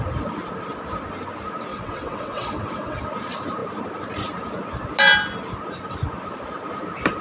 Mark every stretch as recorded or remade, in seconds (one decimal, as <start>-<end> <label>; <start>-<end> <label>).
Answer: 0.0-1.7 recorded; 1.7-3.0 remade; 3.0-7.2 recorded